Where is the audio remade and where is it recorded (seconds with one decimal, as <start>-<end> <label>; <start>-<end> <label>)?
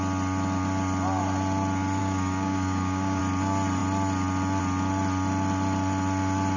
0.0-2.0 recorded; 2.0-3.2 remade; 3.2-6.6 recorded